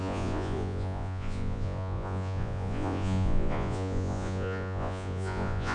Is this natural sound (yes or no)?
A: no